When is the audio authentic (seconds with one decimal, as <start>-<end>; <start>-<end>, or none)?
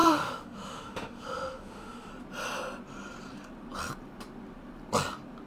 2.1-5.5